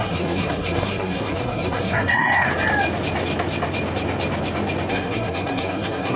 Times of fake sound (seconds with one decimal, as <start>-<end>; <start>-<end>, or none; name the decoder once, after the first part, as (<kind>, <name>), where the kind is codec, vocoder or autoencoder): 0.0-2.5 (codec, SNAC); 4.9-6.2